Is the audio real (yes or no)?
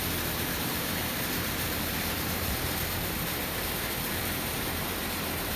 no